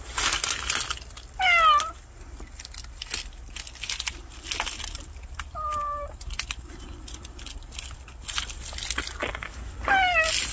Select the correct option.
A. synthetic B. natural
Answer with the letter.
B